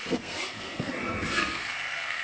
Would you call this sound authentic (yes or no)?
no